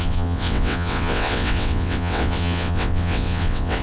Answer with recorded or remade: remade